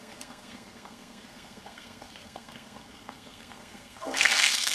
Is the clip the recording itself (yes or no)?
no